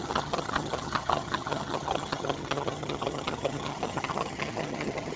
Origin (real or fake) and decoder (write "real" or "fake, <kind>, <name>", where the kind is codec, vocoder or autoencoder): fake, vocoder, HiFi-GAN